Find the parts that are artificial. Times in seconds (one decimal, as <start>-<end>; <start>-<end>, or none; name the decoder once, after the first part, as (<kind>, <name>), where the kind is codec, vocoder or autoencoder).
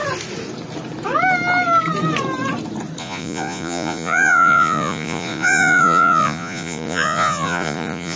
3.0-8.2 (vocoder, Vocos)